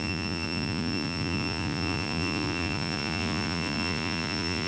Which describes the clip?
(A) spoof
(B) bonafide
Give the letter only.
A